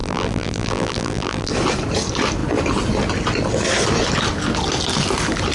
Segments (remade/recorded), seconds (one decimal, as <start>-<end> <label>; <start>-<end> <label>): 0.0-1.5 remade; 1.5-5.5 recorded